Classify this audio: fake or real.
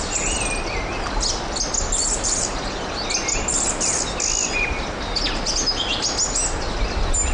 real